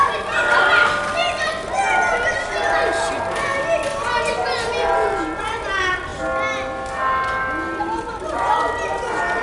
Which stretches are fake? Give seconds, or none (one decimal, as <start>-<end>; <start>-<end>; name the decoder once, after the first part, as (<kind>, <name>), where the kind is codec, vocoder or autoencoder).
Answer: 0.0-1.2 (vocoder, BigVGAN v2); 2.1-3.5; 5.2-6.1; 7.8-9.4